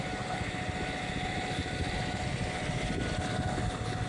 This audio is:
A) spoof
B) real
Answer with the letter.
B